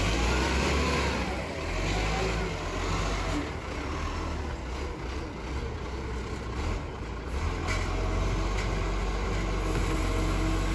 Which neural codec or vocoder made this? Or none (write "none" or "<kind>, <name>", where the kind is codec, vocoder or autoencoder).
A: none